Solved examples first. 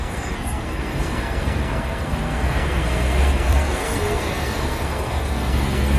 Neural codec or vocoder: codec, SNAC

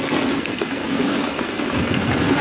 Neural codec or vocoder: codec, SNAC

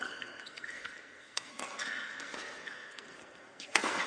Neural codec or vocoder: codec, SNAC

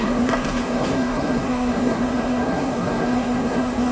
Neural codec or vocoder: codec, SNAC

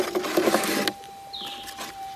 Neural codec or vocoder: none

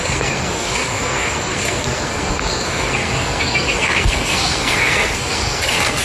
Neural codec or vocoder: codec, SNAC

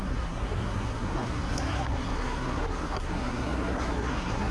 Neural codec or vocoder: codec, SNAC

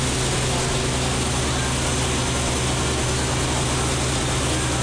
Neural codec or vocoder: none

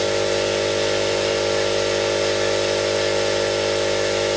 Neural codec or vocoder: none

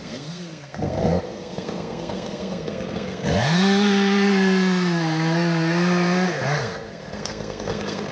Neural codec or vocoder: codec, SNAC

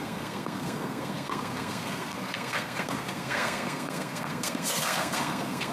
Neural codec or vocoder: codec, SNAC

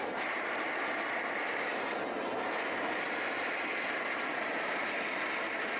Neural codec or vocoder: none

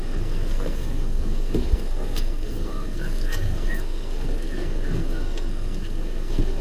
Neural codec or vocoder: codec, SNAC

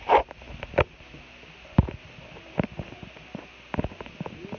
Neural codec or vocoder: none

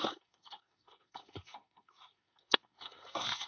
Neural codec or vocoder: codec, SNAC